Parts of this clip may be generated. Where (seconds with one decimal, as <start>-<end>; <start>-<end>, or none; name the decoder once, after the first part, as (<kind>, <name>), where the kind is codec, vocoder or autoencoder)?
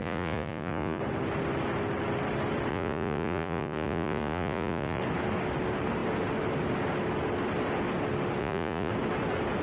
0.0-1.0 (vocoder, Vocos); 2.7-5.0; 8.4-8.9